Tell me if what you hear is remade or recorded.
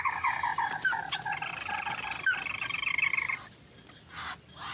recorded